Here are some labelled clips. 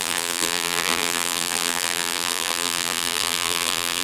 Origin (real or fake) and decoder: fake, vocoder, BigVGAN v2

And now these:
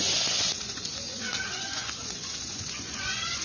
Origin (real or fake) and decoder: fake, vocoder, Vocos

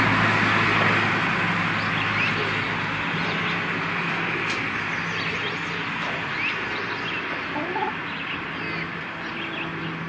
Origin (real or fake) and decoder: real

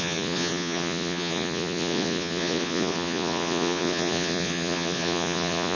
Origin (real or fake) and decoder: fake, vocoder, Vocos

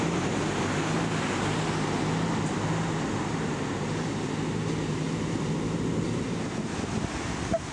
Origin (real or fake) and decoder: real